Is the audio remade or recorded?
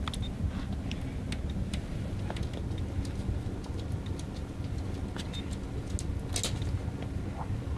recorded